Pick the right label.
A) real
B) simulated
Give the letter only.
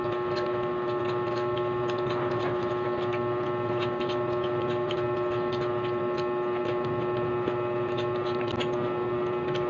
A